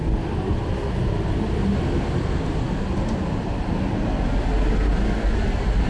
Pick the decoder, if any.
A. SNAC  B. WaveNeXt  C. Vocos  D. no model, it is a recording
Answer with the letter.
D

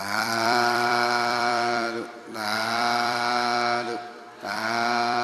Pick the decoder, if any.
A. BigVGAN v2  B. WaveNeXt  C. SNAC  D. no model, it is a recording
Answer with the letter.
A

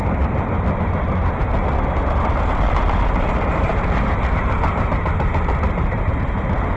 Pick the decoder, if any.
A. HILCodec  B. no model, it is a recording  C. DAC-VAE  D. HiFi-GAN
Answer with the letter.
B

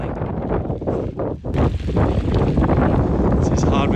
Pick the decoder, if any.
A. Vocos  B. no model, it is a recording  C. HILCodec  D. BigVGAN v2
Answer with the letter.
B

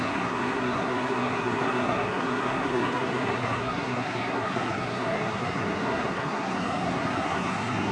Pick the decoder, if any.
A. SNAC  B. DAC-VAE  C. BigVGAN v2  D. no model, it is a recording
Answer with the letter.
A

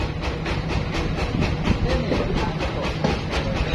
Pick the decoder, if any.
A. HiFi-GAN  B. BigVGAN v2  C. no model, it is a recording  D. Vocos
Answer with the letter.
C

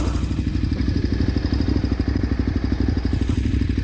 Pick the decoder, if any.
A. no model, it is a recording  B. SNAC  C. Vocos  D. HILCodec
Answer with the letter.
A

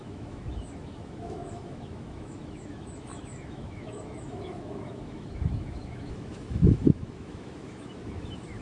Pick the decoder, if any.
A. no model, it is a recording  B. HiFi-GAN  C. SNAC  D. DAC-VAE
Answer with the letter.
D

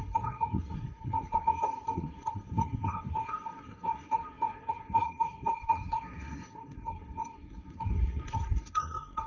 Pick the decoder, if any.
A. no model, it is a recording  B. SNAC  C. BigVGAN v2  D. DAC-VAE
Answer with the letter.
B